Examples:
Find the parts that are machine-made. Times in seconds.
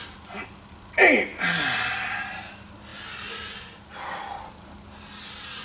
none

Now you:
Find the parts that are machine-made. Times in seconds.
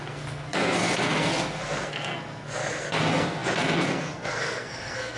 0.0-5.2 (codec, SNAC)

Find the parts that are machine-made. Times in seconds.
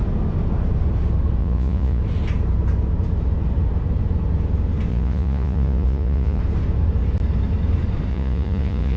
1.4-2.0 (vocoder, Vocos); 4.9-6.4; 8.1-9.0